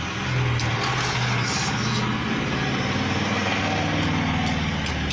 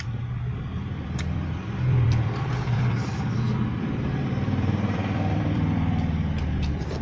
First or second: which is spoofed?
second